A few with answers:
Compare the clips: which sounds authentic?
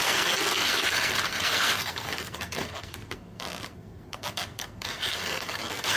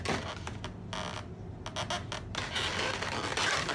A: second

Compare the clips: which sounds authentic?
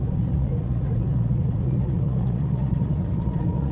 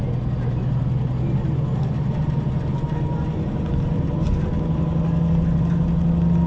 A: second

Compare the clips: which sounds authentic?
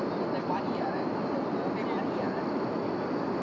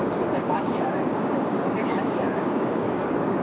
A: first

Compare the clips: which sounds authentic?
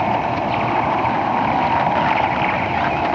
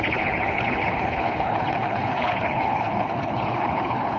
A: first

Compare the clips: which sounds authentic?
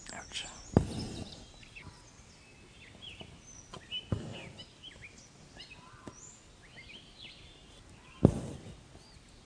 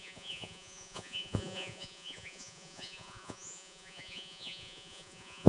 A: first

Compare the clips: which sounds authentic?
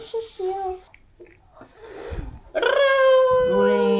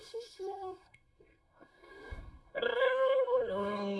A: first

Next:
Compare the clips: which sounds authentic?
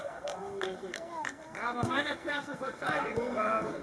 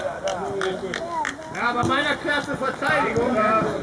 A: second